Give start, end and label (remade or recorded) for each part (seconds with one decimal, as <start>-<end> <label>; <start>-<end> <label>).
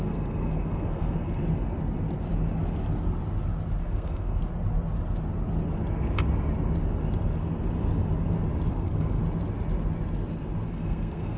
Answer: 0.0-1.4 remade; 1.4-3.8 recorded; 3.8-4.4 remade; 4.4-8.7 recorded; 8.7-9.2 remade; 9.2-10.7 recorded; 10.7-11.4 remade